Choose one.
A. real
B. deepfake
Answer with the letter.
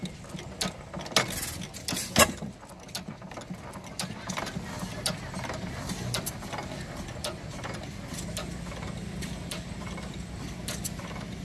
A